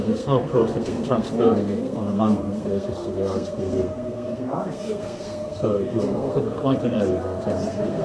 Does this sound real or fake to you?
fake